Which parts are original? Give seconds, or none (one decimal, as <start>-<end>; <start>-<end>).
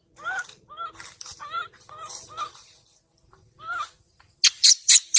0.0-5.2